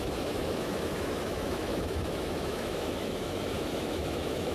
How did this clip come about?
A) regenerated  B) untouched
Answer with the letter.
A